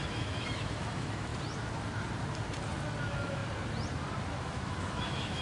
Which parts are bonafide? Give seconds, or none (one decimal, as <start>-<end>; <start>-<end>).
1.3-3.0; 3.4-4.3